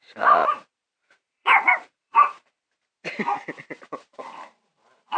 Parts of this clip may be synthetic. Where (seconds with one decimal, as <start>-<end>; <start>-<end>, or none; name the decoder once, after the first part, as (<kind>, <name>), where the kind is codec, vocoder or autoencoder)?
0.4-2.6 (vocoder, BigVGAN v2); 4.2-5.2

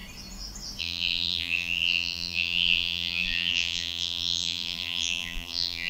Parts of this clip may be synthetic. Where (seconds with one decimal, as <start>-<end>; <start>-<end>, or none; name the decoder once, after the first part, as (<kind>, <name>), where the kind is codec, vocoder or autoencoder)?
0.8-5.9 (vocoder, BigVGAN v2)

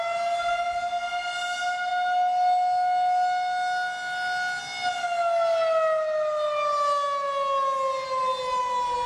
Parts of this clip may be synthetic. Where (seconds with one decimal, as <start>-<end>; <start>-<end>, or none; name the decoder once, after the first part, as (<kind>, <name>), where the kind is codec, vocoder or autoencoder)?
none

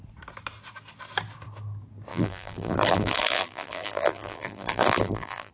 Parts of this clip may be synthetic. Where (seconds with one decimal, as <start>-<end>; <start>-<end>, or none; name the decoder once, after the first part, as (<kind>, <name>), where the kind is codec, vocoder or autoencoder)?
2.1-5.5 (vocoder, BigVGAN v2)

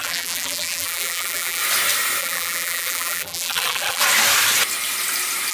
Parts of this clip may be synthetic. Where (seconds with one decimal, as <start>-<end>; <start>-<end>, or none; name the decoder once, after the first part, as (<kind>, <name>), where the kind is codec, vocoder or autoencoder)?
0.0-1.6 (vocoder, BigVGAN v2); 2.2-4.0

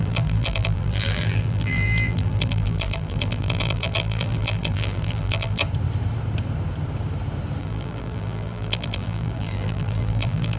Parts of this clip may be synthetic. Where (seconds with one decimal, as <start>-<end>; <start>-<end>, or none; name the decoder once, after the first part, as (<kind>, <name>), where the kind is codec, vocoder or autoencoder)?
0.0-5.6 (vocoder, BigVGAN v2); 7.6-10.6

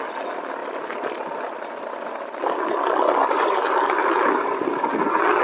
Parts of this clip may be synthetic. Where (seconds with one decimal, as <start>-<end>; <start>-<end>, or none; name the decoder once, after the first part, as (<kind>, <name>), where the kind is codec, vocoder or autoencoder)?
0.6-1.2 (vocoder, BigVGAN v2); 3.2-4.9